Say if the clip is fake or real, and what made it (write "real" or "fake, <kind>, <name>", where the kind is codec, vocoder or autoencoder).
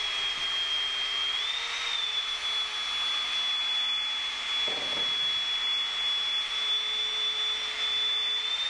real